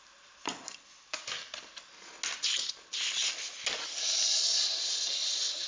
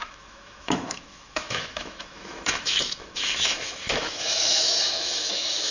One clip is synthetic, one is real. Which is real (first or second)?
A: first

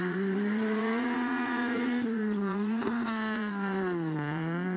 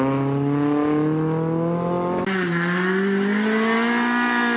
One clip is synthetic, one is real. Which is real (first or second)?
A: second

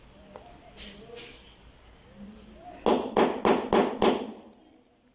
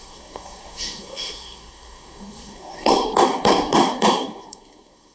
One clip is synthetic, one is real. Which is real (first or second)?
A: first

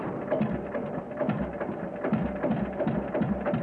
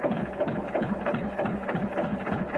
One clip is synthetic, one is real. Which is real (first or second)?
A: first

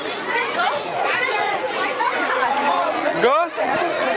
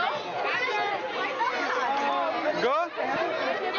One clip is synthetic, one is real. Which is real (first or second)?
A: second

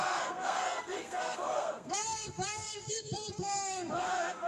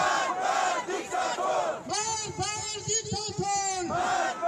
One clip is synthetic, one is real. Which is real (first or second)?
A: second